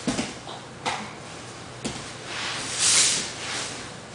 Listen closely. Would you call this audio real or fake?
real